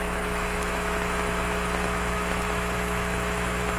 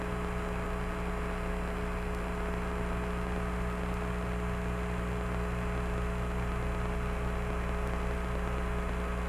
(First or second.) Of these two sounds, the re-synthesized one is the first